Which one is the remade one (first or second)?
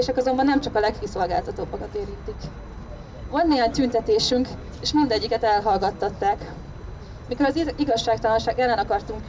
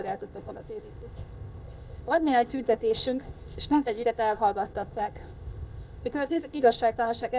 second